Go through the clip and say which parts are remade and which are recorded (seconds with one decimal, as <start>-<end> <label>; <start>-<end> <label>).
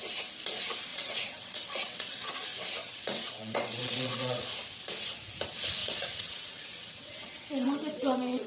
0.0-0.9 recorded; 0.9-2.3 remade; 2.3-2.8 recorded; 2.8-4.4 remade; 4.4-5.8 recorded; 5.8-8.5 remade